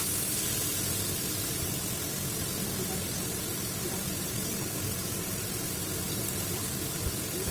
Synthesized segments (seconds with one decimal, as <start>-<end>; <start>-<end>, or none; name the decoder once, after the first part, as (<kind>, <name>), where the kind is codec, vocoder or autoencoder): none